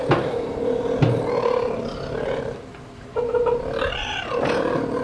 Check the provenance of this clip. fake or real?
real